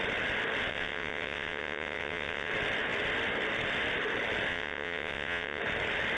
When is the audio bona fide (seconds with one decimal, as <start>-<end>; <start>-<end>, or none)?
0.0-0.7; 2.5-4.5; 5.6-6.2